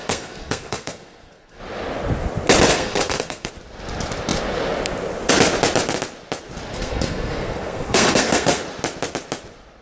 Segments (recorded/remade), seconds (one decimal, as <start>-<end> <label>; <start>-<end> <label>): 0.0-1.6 remade; 1.6-2.7 recorded; 2.7-3.5 remade; 3.5-6.7 recorded; 6.7-8.6 remade; 8.6-9.8 recorded

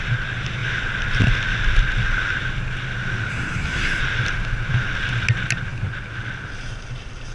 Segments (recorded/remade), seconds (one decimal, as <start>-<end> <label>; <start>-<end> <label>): 0.0-3.3 recorded; 3.3-4.0 remade; 4.0-7.3 recorded